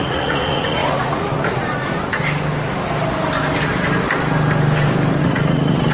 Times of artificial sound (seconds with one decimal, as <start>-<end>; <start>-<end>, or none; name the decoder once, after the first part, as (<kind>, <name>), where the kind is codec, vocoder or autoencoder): 0.0-1.9 (vocoder, Vocos); 5.2-5.9